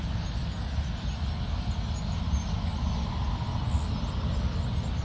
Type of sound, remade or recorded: recorded